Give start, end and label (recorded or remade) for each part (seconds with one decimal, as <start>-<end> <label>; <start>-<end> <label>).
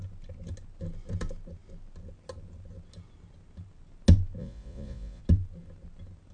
0.0-4.4 recorded; 4.4-5.2 remade; 5.2-6.3 recorded